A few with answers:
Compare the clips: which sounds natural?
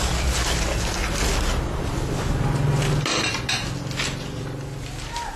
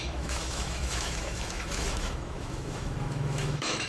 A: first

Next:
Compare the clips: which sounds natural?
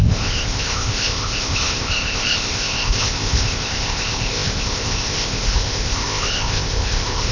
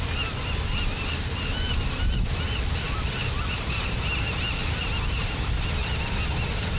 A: second